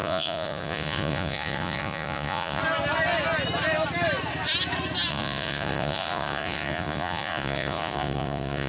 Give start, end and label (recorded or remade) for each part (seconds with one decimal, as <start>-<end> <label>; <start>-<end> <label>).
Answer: 0.0-2.6 remade; 2.6-5.1 recorded; 5.1-8.7 remade